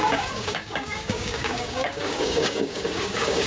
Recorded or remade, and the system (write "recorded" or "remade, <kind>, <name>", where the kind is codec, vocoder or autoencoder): remade, codec, DAC